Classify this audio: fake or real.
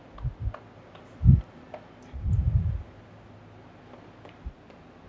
real